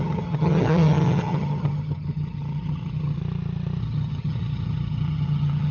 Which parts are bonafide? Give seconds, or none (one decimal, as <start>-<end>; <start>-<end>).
3.2-3.8